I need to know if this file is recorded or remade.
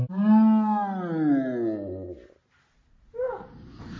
recorded